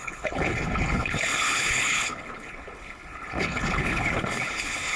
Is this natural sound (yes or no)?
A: no